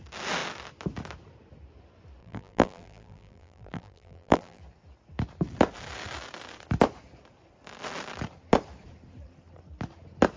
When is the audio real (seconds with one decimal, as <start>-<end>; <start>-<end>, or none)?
0.0-2.2; 4.6-10.4